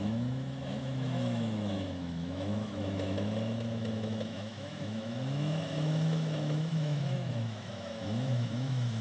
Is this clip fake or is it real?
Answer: fake